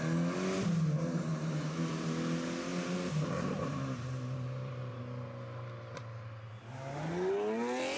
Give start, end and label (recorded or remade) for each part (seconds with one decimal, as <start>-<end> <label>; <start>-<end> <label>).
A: 0.0-1.3 recorded; 1.3-1.9 remade; 1.9-2.7 recorded; 2.7-5.0 remade; 5.0-8.0 recorded